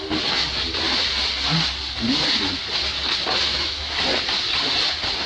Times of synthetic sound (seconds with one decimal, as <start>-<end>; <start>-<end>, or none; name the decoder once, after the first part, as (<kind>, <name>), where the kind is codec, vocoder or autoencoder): 3.5-4.0 (autoencoder, DAC-VAE)